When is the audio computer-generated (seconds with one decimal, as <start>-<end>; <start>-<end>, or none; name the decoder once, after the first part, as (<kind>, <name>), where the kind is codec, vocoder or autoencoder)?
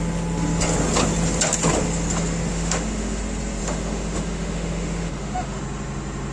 2.5-3.2 (autoencoder, DAC-VAE); 3.6-5.6